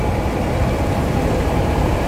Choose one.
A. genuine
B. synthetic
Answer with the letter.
A